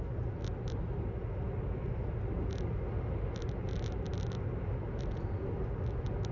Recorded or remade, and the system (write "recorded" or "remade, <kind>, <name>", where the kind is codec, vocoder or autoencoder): recorded